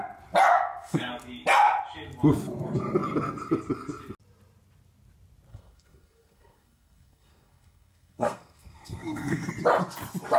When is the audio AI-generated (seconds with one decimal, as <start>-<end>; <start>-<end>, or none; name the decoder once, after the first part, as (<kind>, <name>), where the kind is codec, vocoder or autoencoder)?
0.5-1.1 (codec, SNAC); 5.5-9.5